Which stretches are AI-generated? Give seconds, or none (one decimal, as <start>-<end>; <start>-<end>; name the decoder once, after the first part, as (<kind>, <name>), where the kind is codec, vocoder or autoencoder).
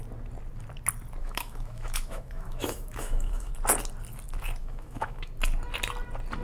1.2-3.5 (autoencoder, DAC-VAE); 4.6-5.3